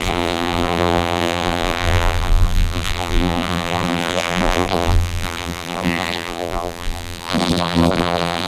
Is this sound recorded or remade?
remade